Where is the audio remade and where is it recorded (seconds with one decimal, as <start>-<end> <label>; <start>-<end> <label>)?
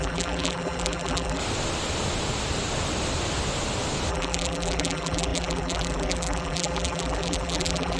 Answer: 0.0-1.4 remade; 1.4-4.1 recorded; 4.1-8.0 remade